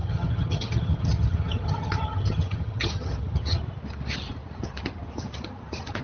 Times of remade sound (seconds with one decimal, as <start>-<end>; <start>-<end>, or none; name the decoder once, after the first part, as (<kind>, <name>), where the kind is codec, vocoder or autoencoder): 0.0-3.6 (vocoder, HiFi-GAN)

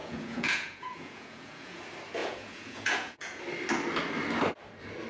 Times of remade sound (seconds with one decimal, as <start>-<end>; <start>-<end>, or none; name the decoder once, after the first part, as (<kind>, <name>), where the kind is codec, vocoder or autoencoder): 0.0-1.8 (vocoder, Vocos); 2.2-3.4

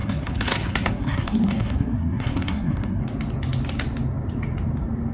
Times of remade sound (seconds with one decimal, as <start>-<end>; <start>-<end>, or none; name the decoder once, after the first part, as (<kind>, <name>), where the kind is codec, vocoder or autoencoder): 0.0-3.0 (codec, SNAC)

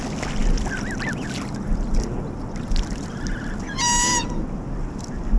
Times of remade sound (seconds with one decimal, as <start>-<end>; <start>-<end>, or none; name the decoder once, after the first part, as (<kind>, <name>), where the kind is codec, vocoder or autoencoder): none